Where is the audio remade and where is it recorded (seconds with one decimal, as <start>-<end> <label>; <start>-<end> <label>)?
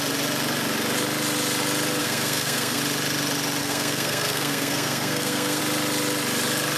0.0-2.0 recorded; 2.0-2.8 remade; 2.8-3.6 recorded; 3.6-5.6 remade; 5.6-6.8 recorded